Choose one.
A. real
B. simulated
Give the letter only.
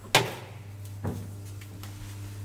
A